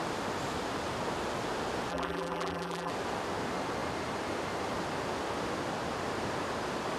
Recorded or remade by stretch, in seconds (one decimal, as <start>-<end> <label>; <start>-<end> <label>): 0.0-1.9 recorded; 1.9-2.9 remade; 2.9-7.0 recorded